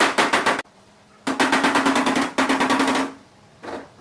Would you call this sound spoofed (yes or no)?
no